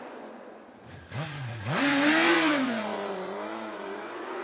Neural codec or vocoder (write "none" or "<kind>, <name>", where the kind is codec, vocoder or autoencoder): vocoder, Vocos